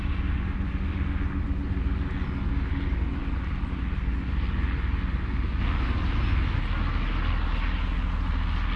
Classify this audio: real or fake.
real